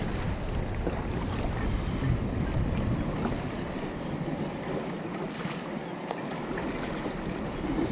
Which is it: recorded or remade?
recorded